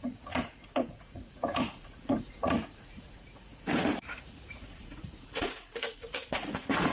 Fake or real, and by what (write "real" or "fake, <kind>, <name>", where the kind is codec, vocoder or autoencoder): fake, vocoder, Vocos